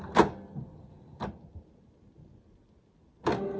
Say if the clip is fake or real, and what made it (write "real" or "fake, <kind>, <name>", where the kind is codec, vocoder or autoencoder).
real